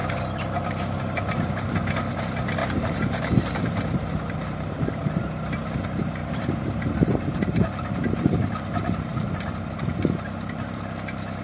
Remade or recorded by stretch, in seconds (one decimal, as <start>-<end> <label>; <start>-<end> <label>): 0.0-1.5 remade; 1.5-2.6 recorded; 2.6-5.2 remade; 5.2-6.2 recorded; 6.2-10.8 remade; 10.8-11.4 recorded